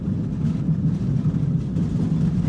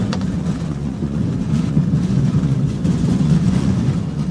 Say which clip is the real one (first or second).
first